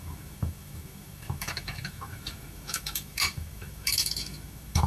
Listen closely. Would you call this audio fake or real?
fake